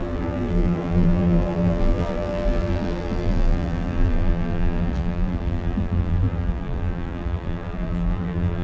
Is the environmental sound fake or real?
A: fake